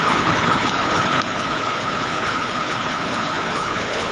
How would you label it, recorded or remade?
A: remade